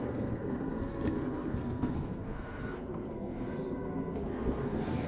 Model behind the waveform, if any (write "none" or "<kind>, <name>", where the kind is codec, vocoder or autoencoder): codec, SNAC